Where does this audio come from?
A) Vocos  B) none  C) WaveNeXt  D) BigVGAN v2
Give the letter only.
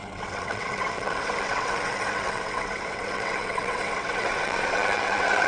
C